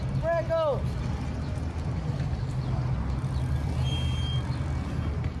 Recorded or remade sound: recorded